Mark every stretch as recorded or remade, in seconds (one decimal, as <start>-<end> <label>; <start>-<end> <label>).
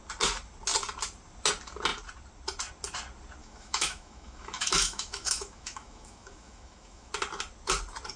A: 0.0-3.4 recorded; 3.4-7.1 remade; 7.1-8.2 recorded